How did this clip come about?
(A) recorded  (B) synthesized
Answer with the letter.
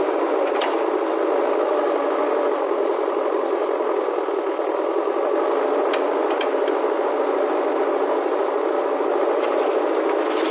A